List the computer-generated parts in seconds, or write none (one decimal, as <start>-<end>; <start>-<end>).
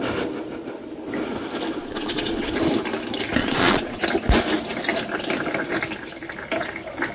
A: 1.8-2.5; 3.4-4.0